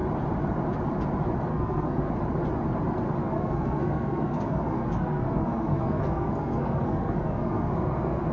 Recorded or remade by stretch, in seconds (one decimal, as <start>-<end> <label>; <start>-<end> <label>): 0.0-1.5 recorded; 1.5-2.1 remade; 2.1-3.2 recorded; 3.2-8.3 remade